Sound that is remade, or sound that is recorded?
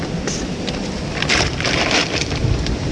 remade